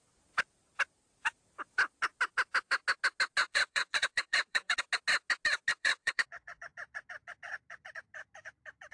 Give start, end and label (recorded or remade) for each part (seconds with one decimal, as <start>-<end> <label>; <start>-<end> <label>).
0.0-3.4 recorded; 3.4-4.8 remade; 4.8-5.7 recorded; 5.7-6.6 remade; 6.6-8.9 recorded